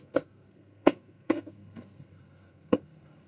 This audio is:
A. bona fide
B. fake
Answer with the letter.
B